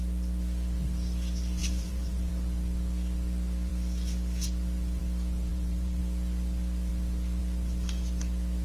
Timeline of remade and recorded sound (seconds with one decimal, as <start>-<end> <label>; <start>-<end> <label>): 0.0-1.6 recorded; 1.6-2.3 remade; 2.3-5.5 recorded; 5.5-6.0 remade; 6.0-8.6 recorded